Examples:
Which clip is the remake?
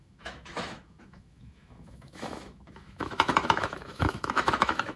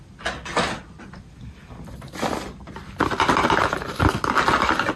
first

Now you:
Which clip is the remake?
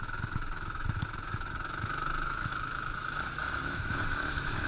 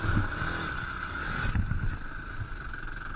first